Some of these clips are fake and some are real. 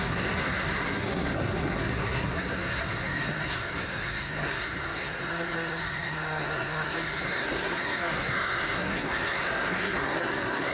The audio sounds fake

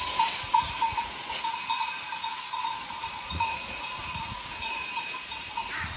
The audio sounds fake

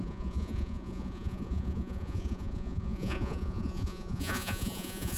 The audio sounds fake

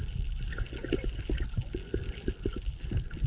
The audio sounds real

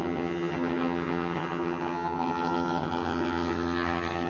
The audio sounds fake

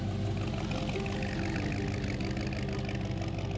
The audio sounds real